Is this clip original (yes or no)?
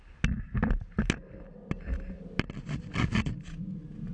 yes